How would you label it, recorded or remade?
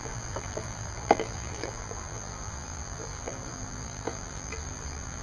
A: remade